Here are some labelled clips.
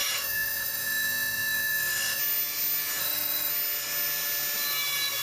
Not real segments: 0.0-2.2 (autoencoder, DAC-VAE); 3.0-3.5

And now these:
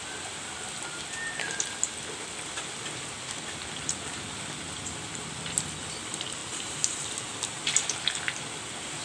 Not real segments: 6.4-7.7 (vocoder, BigVGAN v2)

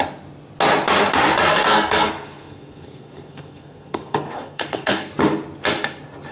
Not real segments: 1.5-5.1 (codec, SNAC)

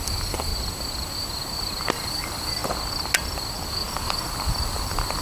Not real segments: 0.0-0.5 (vocoder, BigVGAN v2); 1.9-2.6; 3.9-5.2